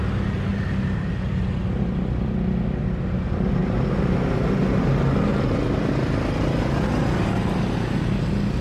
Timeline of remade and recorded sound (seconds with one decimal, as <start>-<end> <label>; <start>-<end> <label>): 0.0-0.5 recorded; 0.5-1.1 remade; 1.1-3.6 recorded; 3.6-4.8 remade; 4.8-5.3 recorded; 5.3-5.9 remade; 5.9-8.6 recorded